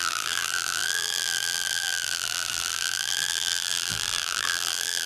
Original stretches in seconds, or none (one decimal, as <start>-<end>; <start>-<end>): none